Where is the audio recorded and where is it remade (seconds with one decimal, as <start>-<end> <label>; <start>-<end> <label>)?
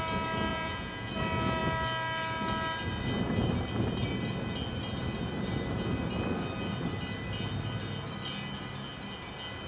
0.0-0.5 recorded; 0.5-1.1 remade; 1.1-9.7 recorded